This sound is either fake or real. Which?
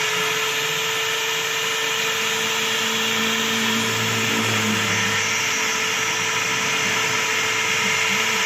real